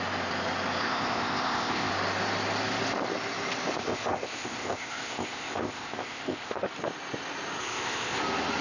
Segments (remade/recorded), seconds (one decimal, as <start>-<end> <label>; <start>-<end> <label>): 0.0-0.8 recorded; 0.8-1.9 remade; 1.9-3.8 recorded; 3.8-6.7 remade; 6.7-7.6 recorded; 7.6-8.2 remade; 8.2-8.6 recorded